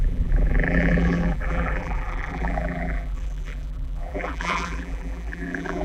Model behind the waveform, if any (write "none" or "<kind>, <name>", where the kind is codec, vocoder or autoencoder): vocoder, BigVGAN v2